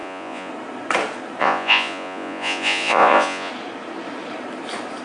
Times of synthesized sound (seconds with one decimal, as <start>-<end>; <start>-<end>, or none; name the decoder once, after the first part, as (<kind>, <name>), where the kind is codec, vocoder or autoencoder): 0.0-0.5 (vocoder, Vocos); 1.4-3.5

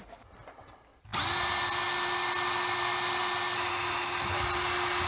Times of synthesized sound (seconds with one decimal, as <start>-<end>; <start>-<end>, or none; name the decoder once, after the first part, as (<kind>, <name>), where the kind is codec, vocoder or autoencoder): none

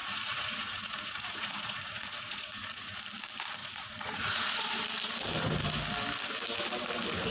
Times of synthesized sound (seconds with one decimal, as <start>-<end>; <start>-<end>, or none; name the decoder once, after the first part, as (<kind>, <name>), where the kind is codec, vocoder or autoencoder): 0.0-3.0 (vocoder, Vocos); 3.6-4.6

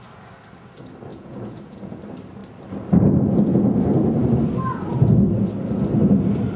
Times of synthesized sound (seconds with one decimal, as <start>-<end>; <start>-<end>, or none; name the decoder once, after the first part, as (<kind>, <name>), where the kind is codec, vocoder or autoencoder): 1.1-2.0 (vocoder, Vocos)

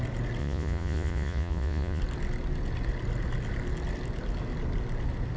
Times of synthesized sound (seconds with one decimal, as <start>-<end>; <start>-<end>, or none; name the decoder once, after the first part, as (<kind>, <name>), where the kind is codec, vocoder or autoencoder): 0.4-2.0 (vocoder, Vocos)

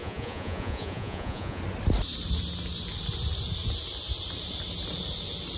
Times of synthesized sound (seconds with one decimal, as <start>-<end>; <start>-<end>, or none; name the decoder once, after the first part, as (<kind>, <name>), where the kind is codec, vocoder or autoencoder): 0.0-1.6 (vocoder, Vocos)

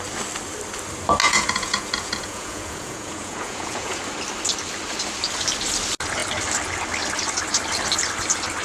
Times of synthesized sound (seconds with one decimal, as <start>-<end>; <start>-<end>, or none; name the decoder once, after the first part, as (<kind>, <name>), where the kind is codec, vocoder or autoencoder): 1.2-4.0 (vocoder, Vocos)